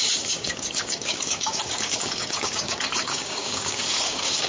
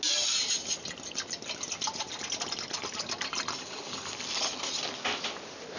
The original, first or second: second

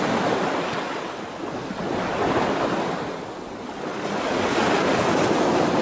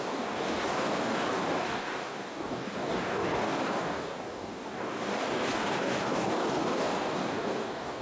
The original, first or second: first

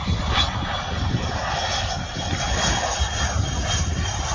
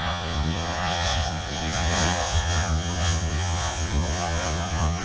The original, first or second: first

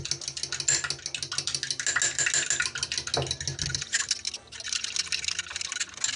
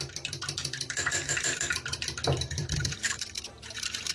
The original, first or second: first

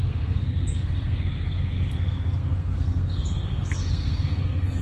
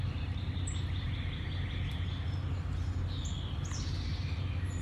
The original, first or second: second